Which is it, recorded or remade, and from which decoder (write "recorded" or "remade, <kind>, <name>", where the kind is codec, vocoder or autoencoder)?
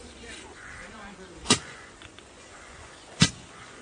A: remade, vocoder, Vocos